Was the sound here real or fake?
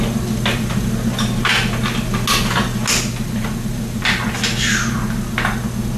real